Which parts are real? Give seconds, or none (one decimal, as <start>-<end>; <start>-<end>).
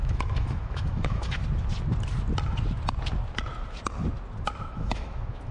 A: 1.4-4.7